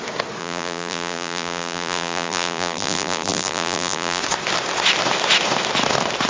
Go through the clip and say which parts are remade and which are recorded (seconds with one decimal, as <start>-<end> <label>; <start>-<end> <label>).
0.0-0.4 recorded; 0.4-4.2 remade; 4.2-6.3 recorded